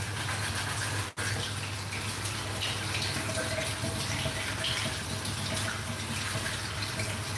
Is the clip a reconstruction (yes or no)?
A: no